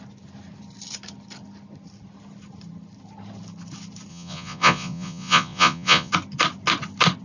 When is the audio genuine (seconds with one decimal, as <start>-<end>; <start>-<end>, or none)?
0.0-4.1; 6.1-7.2